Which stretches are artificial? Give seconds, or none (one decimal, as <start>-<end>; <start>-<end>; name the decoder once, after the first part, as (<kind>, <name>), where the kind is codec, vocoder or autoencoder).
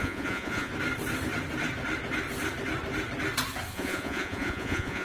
0.0-0.7 (vocoder, Vocos); 3.7-5.0